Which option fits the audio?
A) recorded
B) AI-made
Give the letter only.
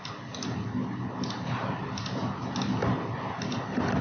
A